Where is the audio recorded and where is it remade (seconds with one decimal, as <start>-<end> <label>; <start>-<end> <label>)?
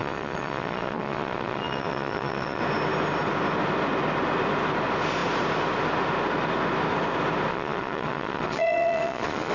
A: 0.0-2.6 remade; 2.6-7.5 recorded; 7.5-9.5 remade